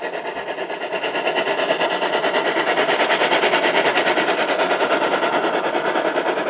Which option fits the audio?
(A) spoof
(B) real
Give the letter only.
B